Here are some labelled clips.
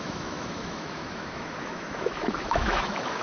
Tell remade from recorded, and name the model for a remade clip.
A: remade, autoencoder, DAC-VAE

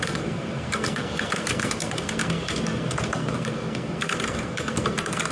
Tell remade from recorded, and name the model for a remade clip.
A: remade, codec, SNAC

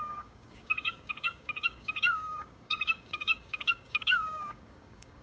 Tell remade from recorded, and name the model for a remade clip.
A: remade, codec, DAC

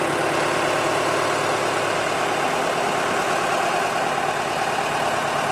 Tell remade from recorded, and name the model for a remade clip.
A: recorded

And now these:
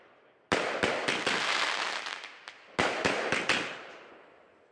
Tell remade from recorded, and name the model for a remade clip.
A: recorded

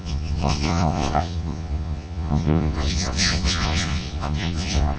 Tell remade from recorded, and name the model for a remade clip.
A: remade, vocoder, Vocos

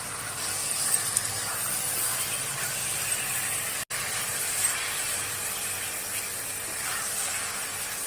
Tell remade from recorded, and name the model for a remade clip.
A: recorded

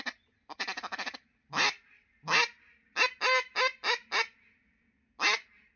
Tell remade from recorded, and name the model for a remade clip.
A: recorded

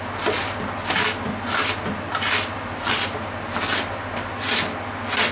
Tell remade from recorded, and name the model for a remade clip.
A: recorded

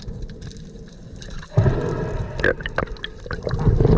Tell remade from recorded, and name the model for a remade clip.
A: recorded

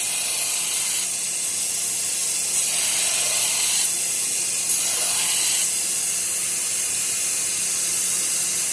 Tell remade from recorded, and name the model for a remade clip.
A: recorded